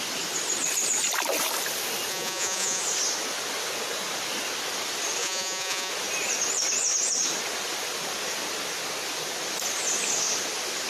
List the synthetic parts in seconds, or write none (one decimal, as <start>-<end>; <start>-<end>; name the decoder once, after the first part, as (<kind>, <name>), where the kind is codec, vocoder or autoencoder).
2.1-2.8 (vocoder, Vocos); 5.2-5.9